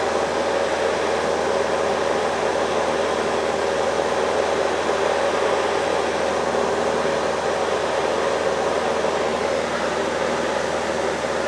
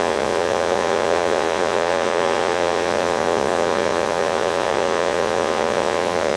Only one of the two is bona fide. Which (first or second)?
first